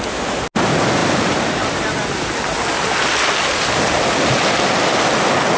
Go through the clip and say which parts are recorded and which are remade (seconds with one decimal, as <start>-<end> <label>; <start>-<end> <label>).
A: 0.0-5.6 recorded